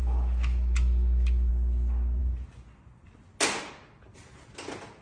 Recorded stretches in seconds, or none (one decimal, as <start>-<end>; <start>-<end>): 1.5-5.0